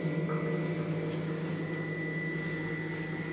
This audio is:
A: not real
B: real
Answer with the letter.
B